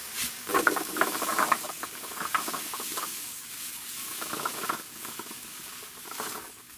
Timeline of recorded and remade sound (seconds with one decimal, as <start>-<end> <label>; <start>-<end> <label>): 0.0-6.8 remade